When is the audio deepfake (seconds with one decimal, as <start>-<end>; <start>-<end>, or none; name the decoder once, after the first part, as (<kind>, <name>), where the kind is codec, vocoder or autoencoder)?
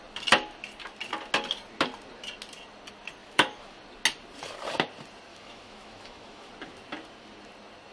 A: 3.2-3.8 (autoencoder, DAC-VAE); 5.3-6.5